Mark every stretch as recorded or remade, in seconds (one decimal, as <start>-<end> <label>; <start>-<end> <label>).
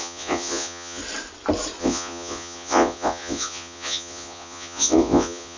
0.0-1.0 remade; 1.0-1.8 recorded; 1.8-5.6 remade